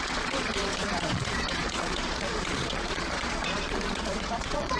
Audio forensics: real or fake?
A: fake